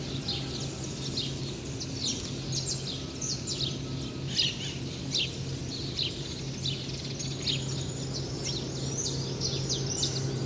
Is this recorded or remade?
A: recorded